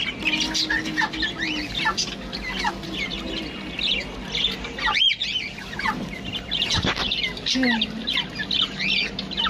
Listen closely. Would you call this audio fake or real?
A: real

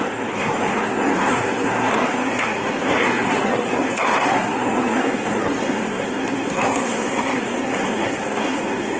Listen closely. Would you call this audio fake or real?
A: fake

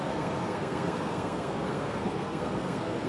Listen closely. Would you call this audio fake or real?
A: fake